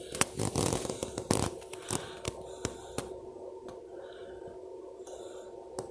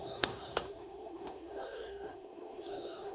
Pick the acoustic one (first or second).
first